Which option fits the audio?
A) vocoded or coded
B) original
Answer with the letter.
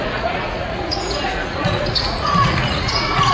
A